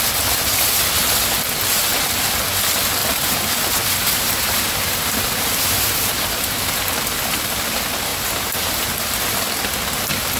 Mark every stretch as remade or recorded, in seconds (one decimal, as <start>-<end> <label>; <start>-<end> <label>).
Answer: 0.0-3.0 recorded; 3.0-6.8 remade; 6.8-8.1 recorded; 8.1-8.9 remade; 8.9-10.4 recorded